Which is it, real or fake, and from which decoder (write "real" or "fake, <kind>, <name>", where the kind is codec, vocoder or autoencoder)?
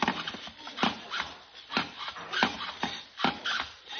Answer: real